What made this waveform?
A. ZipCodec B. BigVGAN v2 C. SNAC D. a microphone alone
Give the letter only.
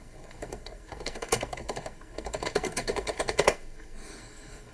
C